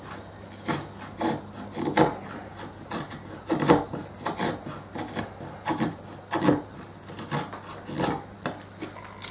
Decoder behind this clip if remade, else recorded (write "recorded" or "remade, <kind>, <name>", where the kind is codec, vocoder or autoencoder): recorded